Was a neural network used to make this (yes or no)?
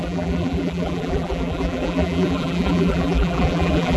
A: yes